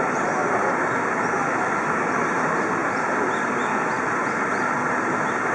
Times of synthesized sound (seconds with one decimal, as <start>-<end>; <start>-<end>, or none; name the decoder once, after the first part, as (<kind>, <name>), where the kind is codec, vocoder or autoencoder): none